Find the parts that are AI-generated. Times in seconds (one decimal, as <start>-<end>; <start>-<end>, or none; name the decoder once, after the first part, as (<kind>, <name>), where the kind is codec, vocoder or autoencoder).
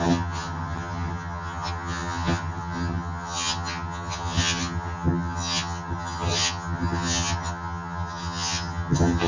0.0-9.3 (vocoder, HiFi-GAN)